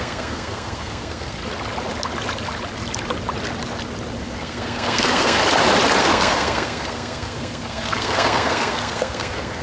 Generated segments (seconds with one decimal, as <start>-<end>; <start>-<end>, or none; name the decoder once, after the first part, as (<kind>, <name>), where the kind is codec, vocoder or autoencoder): 0.0-1.4 (codec, SNAC); 4.2-5.4; 6.0-9.6